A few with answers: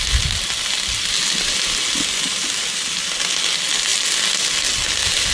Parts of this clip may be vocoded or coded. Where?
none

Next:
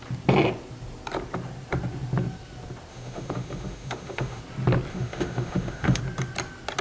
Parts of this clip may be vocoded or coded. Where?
2.9-4.4 (autoencoder, DAC-VAE); 4.9-6.0

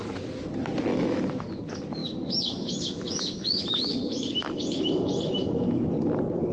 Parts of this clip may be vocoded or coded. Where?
0.9-1.5 (autoencoder, DAC-VAE); 2.0-5.9

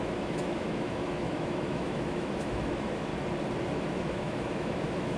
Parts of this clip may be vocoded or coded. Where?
0.0-3.1 (autoencoder, DAC-VAE); 3.8-5.2

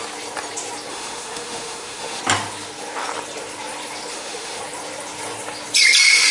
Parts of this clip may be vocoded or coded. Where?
0.9-2.2 (autoencoder, DAC-VAE); 4.1-4.6